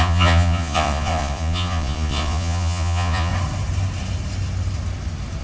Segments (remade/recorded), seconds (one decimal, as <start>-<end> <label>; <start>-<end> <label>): 0.0-3.3 remade; 3.3-5.4 recorded